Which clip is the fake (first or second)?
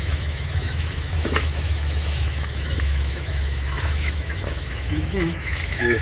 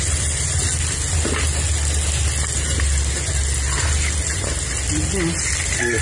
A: first